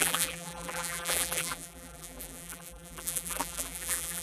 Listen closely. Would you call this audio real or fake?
fake